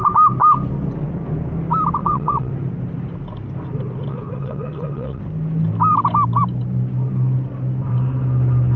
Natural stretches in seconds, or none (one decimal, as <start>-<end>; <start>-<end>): 0.0-2.0; 2.5-4.1; 5.2-8.8